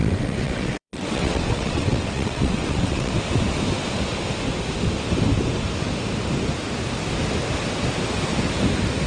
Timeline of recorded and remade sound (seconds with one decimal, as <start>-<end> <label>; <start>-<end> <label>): 0.0-3.1 remade; 3.1-9.1 recorded